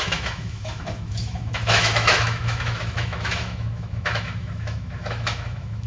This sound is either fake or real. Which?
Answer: fake